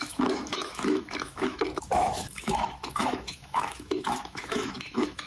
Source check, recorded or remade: remade